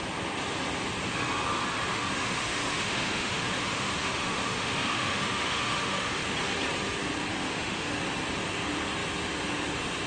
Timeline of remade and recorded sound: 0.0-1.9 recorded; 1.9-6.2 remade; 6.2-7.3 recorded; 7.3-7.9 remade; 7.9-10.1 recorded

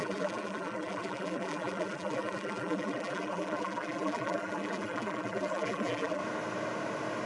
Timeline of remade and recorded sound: 0.0-6.2 remade; 6.2-7.3 recorded

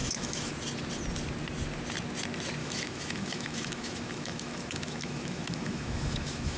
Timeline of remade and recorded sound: 0.0-0.5 remade; 0.5-2.6 recorded; 2.6-6.6 remade

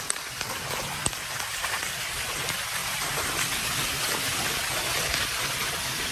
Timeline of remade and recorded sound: 0.0-2.8 recorded; 2.8-4.2 remade; 4.2-6.1 recorded

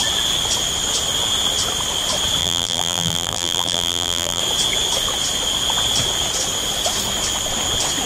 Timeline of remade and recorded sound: 0.0-2.4 recorded; 2.4-4.4 remade; 4.4-8.1 recorded

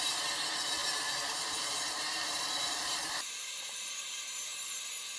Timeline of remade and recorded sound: 0.0-0.8 recorded; 0.8-3.9 remade; 3.9-5.2 recorded

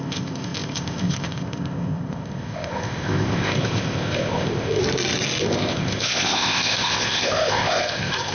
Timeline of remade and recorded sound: 0.0-4.8 remade; 4.8-5.4 recorded; 5.4-8.3 remade

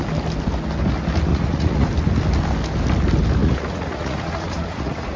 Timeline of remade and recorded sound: 0.0-1.3 recorded; 1.3-1.9 remade; 1.9-3.4 recorded; 3.4-5.2 remade